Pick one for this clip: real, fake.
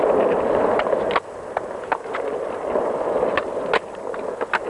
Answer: real